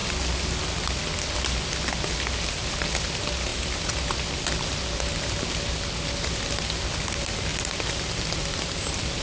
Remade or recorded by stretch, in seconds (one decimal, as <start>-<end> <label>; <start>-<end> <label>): 0.0-9.2 recorded